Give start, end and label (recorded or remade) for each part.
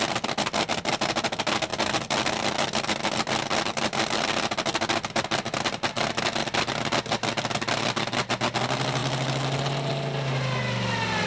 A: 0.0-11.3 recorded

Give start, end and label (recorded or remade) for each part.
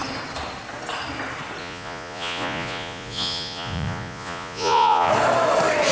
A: 0.0-1.6 recorded; 1.6-5.1 remade; 5.1-5.9 recorded